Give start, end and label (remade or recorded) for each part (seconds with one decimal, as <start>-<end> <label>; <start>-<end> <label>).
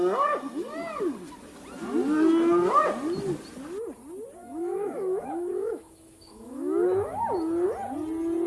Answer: 0.0-4.4 recorded; 4.4-7.2 remade; 7.2-8.5 recorded